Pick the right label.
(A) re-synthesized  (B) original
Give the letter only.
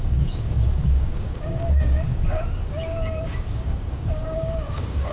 A